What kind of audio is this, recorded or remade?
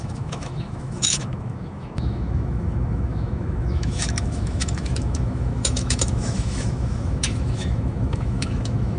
remade